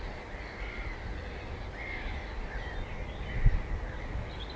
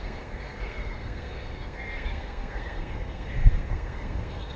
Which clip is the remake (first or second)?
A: second